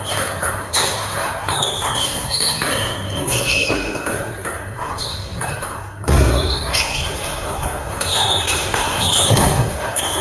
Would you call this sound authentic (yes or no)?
no